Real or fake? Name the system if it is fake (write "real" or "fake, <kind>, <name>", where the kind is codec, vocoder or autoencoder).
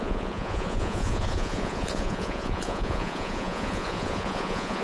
fake, vocoder, Vocos